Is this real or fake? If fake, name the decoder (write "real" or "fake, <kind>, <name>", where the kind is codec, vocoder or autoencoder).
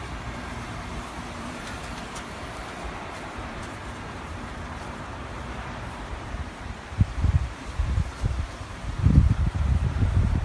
fake, vocoder, BigVGAN v2